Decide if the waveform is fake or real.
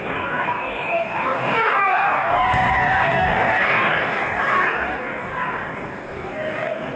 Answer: fake